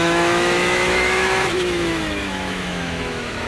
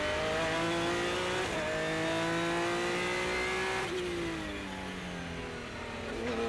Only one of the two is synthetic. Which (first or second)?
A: first